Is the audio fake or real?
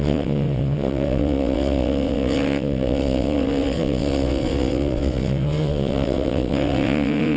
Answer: fake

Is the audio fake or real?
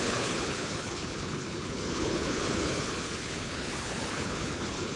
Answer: fake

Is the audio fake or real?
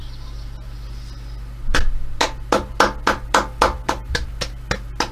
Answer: real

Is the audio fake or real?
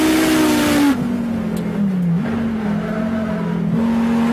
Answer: real